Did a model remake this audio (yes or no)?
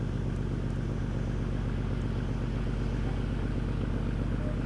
no